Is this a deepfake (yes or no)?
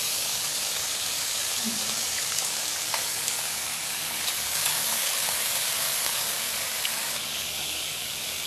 yes